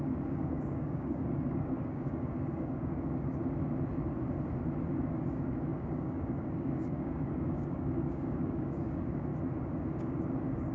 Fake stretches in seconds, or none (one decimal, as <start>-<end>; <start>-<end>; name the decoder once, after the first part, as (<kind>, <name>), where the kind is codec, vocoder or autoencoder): 0.0-3.4 (codec, DAC); 5.3-9.3; 10.0-10.7